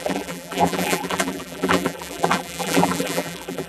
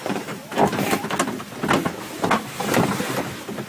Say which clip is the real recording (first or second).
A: second